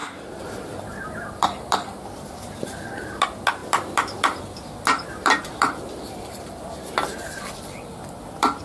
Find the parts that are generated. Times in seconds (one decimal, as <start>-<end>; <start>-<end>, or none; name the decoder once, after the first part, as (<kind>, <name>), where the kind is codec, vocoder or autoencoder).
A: 0.0-3.2 (vocoder, BigVGAN v2); 3.6-8.6